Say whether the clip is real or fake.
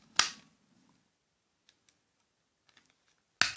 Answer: real